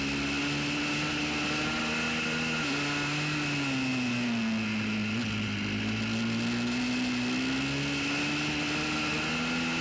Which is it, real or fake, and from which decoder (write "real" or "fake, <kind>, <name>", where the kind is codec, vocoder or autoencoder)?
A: real